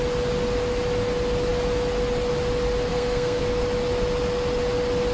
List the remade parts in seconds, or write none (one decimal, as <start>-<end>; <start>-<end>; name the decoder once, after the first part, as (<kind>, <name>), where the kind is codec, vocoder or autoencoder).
2.9-3.4 (codec, SNAC)